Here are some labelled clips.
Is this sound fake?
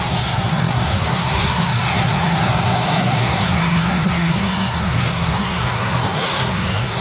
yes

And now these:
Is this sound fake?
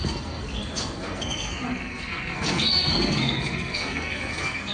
yes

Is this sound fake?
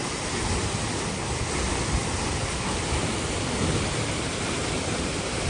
no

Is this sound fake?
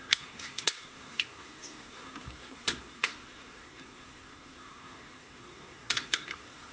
yes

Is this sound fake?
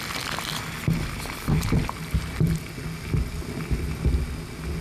no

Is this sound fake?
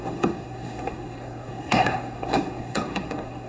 yes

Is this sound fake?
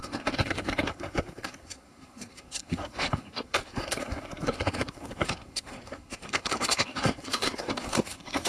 yes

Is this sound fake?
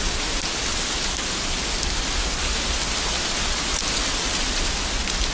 no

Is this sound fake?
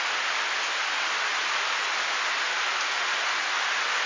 no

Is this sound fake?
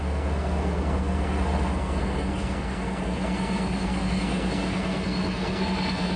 yes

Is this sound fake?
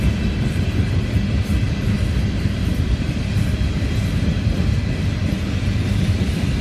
no